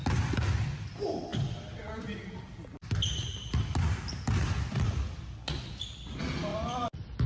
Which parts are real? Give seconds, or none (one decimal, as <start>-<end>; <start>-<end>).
0.0-6.5